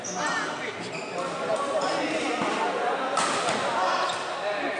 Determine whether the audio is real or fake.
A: real